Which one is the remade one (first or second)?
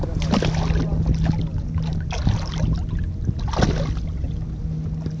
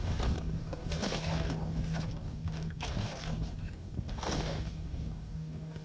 second